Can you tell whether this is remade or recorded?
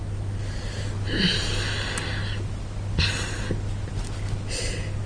recorded